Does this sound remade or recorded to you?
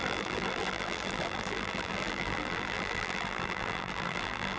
remade